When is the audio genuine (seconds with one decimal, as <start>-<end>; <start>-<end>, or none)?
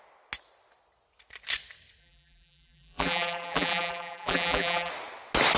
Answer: 0.0-2.0; 4.9-5.6